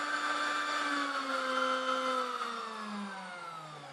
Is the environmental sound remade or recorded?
recorded